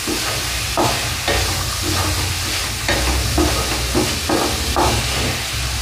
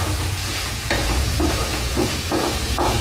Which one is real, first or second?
first